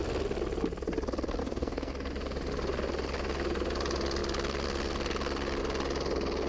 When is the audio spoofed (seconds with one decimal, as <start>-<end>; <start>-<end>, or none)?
1.4-1.9